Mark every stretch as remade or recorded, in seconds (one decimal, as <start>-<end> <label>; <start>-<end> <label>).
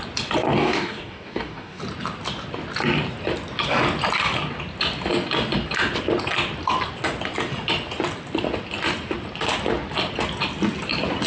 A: 0.0-0.5 recorded; 0.5-1.8 remade; 1.8-11.3 recorded